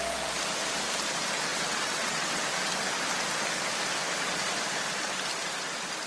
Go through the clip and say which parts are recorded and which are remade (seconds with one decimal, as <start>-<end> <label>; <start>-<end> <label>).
0.0-1.5 recorded; 1.5-2.4 remade; 2.4-6.1 recorded